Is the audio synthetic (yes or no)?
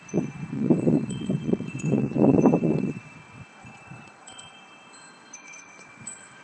yes